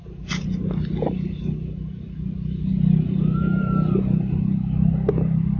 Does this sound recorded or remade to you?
recorded